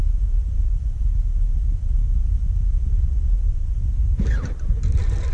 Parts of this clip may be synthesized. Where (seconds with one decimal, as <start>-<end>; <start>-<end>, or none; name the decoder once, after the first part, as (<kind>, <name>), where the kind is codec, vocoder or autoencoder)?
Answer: none

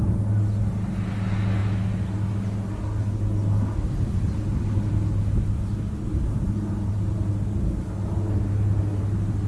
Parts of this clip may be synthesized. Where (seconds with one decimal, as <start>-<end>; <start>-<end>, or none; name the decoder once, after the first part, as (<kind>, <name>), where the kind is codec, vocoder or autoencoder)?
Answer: 6.1-6.7 (vocoder, BigVGAN v2)